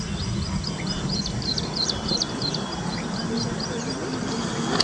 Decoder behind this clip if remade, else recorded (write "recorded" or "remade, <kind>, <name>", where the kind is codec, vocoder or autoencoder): recorded